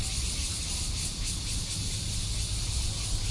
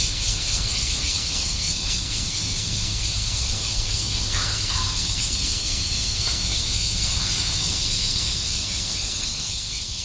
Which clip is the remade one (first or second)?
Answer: second